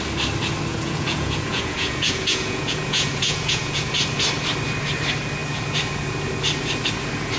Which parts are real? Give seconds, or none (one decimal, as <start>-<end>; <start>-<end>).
0.0-0.7; 3.9-7.4